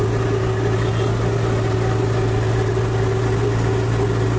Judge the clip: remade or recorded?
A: recorded